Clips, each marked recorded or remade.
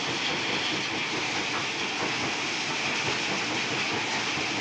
recorded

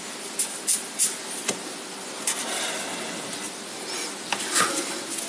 recorded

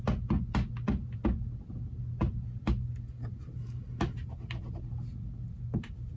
recorded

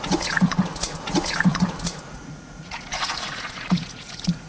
remade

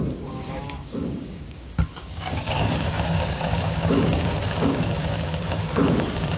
remade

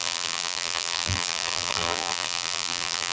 remade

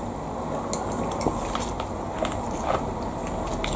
recorded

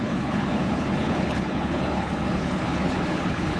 remade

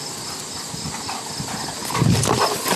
recorded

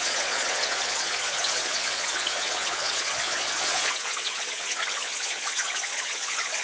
remade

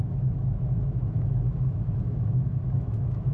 remade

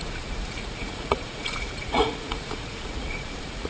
remade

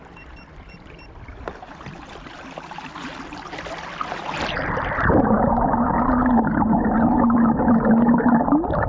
recorded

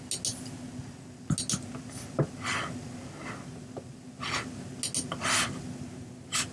recorded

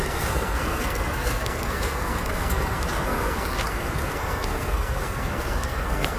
remade